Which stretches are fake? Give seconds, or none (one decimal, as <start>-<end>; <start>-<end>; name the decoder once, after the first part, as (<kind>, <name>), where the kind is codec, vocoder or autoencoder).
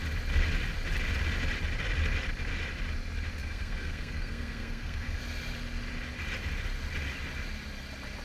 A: 3.4-5.2 (codec, SNAC)